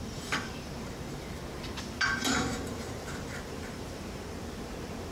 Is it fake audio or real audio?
fake